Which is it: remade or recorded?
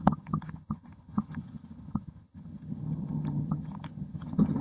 remade